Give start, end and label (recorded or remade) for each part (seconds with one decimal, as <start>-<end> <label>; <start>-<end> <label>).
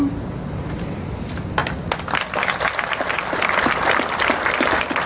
0.0-5.1 recorded